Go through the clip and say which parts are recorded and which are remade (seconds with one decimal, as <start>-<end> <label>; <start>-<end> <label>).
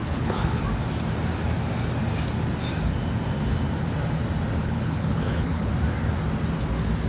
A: 0.0-0.6 remade; 0.6-4.6 recorded; 4.6-5.7 remade; 5.7-7.1 recorded